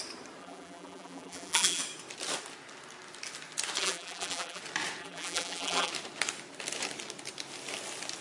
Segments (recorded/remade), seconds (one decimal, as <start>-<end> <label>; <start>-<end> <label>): 0.0-0.4 recorded; 0.4-1.8 remade; 1.8-3.8 recorded; 3.8-4.6 remade; 4.6-5.0 recorded; 5.0-5.9 remade; 5.9-8.2 recorded

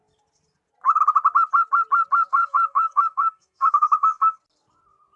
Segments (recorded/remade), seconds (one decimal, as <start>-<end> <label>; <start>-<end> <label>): 0.0-2.3 recorded; 2.3-4.4 remade; 4.4-5.2 recorded

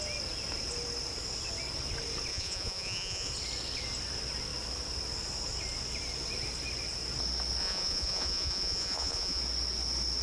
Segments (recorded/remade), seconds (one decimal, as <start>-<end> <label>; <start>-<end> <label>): 0.0-2.3 recorded; 2.3-3.3 remade; 3.3-7.6 recorded; 7.6-9.4 remade; 9.4-10.2 recorded

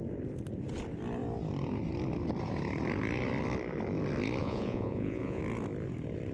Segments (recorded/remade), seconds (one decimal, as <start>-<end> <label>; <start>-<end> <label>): 0.0-4.4 recorded; 4.4-5.4 remade; 5.4-6.3 recorded

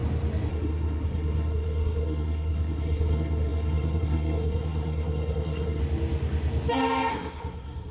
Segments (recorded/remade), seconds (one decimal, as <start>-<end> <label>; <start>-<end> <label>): 0.0-0.5 recorded; 0.5-5.8 remade; 5.8-7.1 recorded; 7.1-7.9 remade

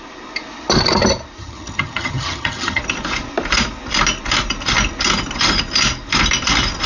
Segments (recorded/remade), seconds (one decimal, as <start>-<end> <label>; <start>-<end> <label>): 0.0-1.4 recorded; 1.4-2.8 remade; 2.8-6.9 recorded